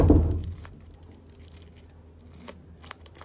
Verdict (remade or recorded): recorded